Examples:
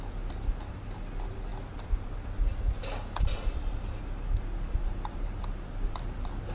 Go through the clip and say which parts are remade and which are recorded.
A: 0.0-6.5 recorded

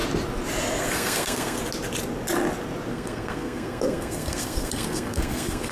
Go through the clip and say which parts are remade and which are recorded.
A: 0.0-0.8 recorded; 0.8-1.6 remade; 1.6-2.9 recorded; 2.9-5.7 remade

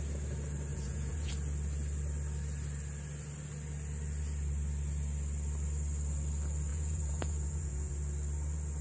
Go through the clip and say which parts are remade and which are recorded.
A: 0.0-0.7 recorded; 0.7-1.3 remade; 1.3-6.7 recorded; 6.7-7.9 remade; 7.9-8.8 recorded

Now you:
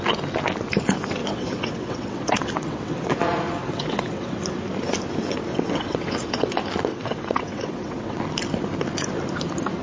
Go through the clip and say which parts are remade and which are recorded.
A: 0.0-1.2 recorded; 1.2-3.2 remade; 3.2-3.6 recorded; 3.6-4.4 remade; 4.4-5.5 recorded; 5.5-6.5 remade; 6.5-6.9 recorded; 6.9-8.2 remade; 8.2-9.8 recorded

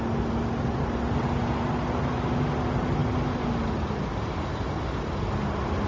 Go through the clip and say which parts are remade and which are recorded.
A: 0.0-5.9 recorded

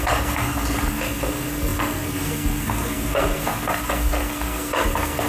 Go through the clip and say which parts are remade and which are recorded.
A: 0.0-5.3 remade

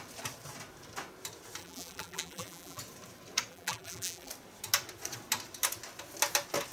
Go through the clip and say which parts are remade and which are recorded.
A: 0.0-1.6 recorded; 1.6-2.8 remade; 2.8-3.5 recorded; 3.5-4.3 remade; 4.3-6.7 recorded